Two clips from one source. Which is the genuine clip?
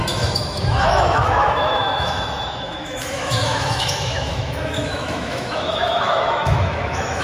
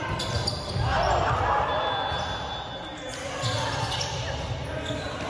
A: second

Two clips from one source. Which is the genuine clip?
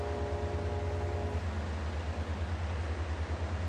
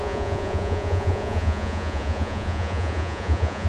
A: first